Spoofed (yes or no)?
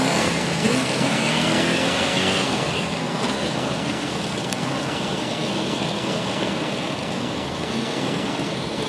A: yes